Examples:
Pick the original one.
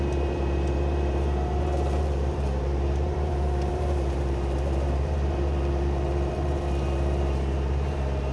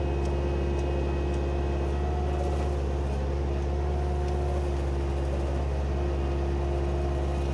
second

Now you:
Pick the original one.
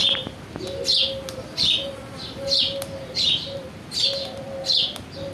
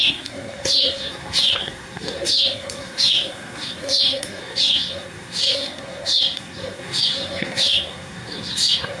first